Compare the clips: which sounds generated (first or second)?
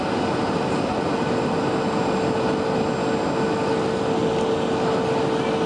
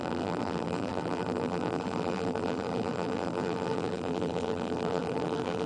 second